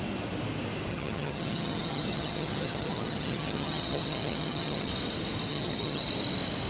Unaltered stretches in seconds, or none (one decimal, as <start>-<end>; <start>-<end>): 0.0-0.9; 4.9-5.5; 6.1-6.7